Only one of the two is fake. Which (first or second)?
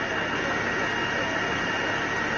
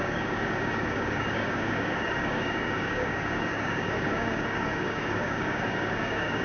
second